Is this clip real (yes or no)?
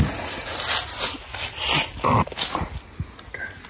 yes